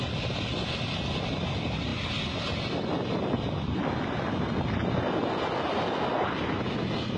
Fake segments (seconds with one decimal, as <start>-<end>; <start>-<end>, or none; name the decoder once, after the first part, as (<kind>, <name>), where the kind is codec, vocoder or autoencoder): none